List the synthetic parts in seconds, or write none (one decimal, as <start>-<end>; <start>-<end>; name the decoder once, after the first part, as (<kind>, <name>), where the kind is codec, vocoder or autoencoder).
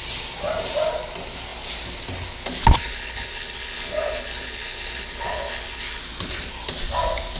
2.8-6.0 (codec, HILCodec)